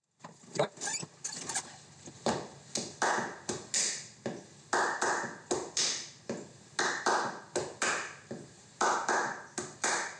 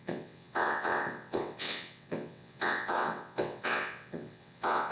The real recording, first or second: first